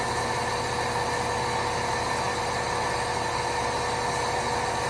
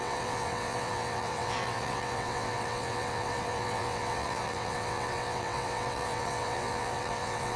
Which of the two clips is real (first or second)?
first